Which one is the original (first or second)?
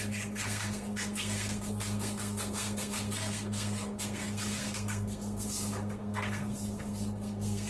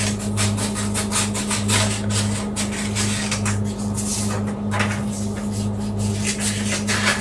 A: second